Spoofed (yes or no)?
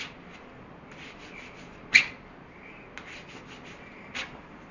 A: no